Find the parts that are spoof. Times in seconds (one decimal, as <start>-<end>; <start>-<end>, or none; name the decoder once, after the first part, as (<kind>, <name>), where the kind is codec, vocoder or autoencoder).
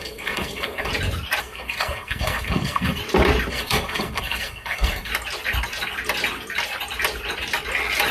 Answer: 0.0-0.9 (codec, SNAC); 1.4-3.0; 3.5-5.1